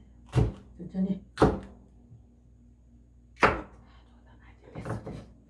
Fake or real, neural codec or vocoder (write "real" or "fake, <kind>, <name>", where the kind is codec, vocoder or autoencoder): real